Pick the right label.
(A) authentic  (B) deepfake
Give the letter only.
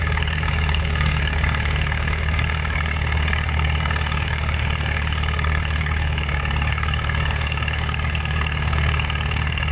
B